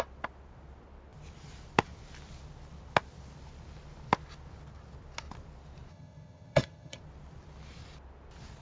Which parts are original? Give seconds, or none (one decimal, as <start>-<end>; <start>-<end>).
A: 0.0-5.9; 7.0-8.6